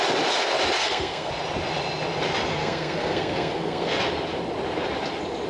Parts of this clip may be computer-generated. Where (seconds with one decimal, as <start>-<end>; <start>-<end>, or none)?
0.8-1.3; 2.5-4.0